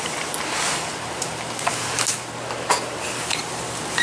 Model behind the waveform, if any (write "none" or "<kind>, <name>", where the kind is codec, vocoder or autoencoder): vocoder, BigVGAN v2